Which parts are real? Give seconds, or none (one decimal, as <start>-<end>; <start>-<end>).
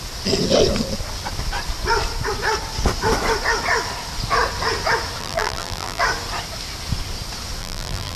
0.0-5.2; 6.0-7.6